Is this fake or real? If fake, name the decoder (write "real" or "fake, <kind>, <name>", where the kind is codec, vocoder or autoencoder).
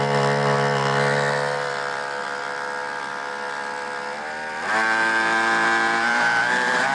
fake, vocoder, BigVGAN v2